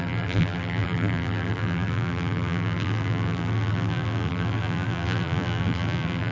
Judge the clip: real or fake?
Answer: fake